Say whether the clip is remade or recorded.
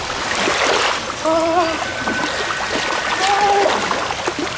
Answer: recorded